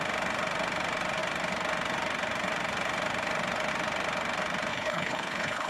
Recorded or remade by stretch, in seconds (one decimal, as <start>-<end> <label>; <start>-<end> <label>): 0.0-4.7 recorded; 4.7-5.7 remade